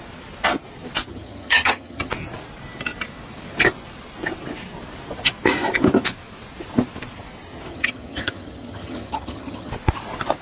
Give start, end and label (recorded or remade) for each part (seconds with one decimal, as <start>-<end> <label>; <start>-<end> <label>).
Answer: 0.0-1.1 recorded; 1.1-2.1 remade; 2.1-7.7 recorded; 7.7-9.7 remade; 9.7-10.4 recorded